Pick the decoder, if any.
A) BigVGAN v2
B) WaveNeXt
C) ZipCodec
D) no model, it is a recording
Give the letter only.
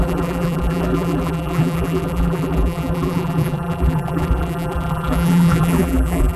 A